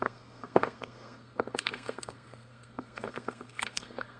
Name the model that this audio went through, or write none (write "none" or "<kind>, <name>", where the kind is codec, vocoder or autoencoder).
codec, SNAC